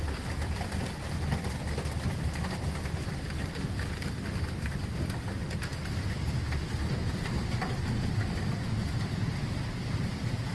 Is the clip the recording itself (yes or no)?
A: yes